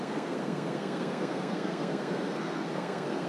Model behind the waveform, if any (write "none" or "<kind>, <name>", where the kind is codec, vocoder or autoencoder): codec, SNAC